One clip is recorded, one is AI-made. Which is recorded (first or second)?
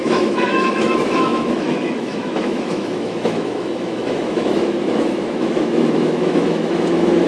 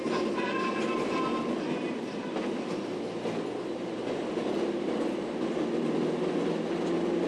second